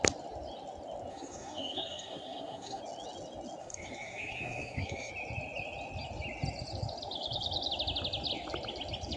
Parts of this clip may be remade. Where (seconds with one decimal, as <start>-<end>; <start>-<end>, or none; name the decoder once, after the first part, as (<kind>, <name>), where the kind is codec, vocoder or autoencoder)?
1.1-2.8 (codec, SNAC); 3.6-5.1